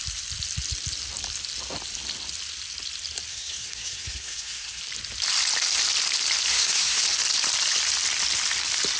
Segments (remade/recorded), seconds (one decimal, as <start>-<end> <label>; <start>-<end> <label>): 0.0-3.3 recorded; 3.3-4.8 remade; 4.8-6.5 recorded; 6.5-7.0 remade; 7.0-9.0 recorded